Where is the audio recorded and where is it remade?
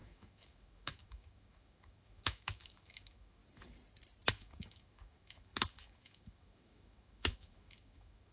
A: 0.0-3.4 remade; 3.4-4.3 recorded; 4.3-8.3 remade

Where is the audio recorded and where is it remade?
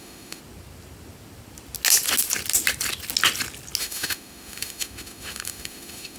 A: 0.0-0.4 remade; 0.4-3.8 recorded; 3.8-6.2 remade